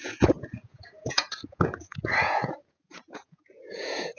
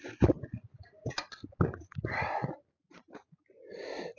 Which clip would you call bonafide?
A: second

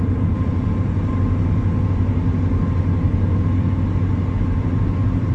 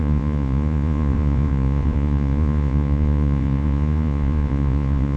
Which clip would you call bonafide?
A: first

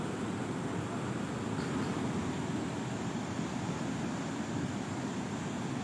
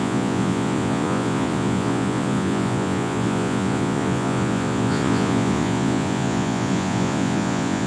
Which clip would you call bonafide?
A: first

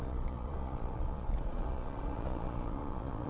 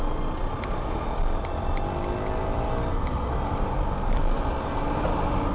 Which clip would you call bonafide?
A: second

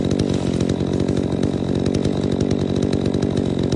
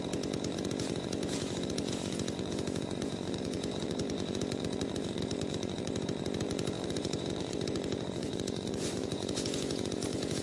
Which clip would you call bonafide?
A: first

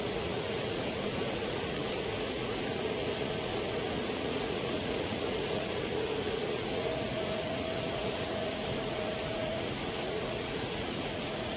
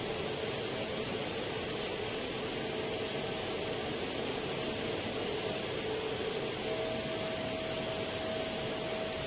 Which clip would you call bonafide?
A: second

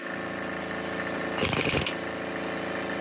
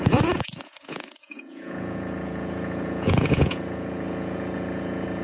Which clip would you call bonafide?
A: first